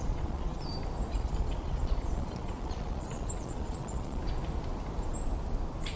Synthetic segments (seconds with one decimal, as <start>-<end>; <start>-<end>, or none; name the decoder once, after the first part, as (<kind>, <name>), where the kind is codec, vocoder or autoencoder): 0.0-0.7 (vocoder, Vocos); 1.1-4.2